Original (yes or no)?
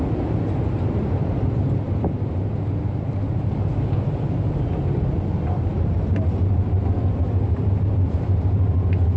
yes